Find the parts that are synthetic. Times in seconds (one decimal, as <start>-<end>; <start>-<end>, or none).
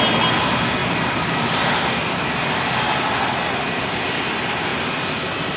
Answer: none